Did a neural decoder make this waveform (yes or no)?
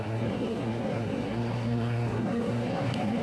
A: yes